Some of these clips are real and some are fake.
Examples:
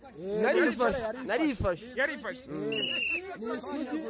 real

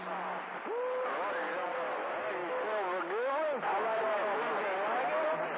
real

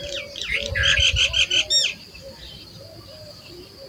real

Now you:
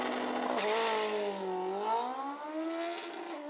real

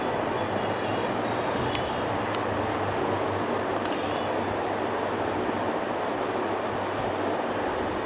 real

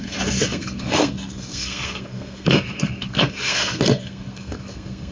fake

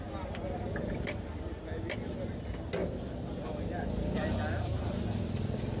real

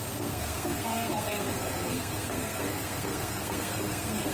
fake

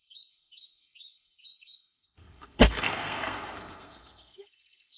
fake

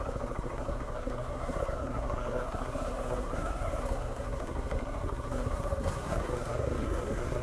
fake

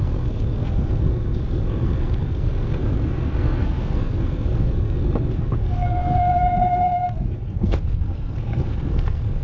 fake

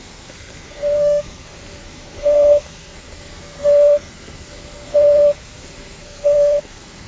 fake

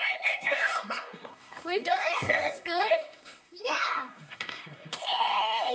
fake